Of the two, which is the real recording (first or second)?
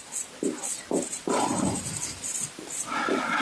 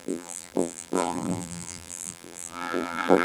first